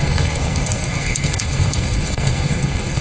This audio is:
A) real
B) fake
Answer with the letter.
B